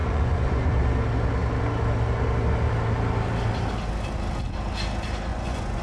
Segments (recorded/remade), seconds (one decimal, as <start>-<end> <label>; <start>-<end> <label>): 0.0-0.7 remade; 0.7-5.3 recorded; 5.3-5.8 remade